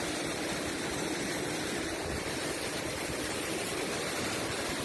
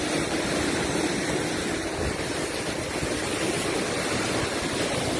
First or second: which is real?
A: second